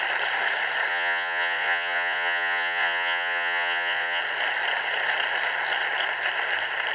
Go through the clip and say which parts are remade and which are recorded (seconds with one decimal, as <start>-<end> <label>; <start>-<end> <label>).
0.0-0.9 recorded; 0.9-4.2 remade; 4.2-6.9 recorded